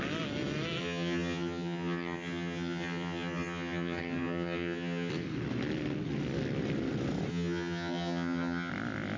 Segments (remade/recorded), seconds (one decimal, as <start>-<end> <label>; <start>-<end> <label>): 0.0-0.8 recorded; 0.8-5.1 remade; 5.1-7.3 recorded; 7.3-8.7 remade; 8.7-9.2 recorded